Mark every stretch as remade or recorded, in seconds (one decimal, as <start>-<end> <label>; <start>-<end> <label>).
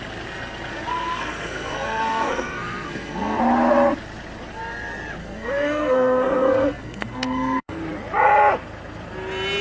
0.0-0.9 recorded; 0.9-3.4 remade; 3.4-5.2 recorded; 5.2-7.8 remade; 7.8-9.6 recorded